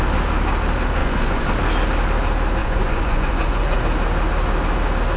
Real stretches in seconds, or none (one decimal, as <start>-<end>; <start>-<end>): 0.0-1.0; 1.5-2.6; 3.8-5.2